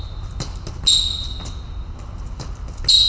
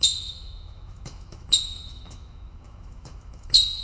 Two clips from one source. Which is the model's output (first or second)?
second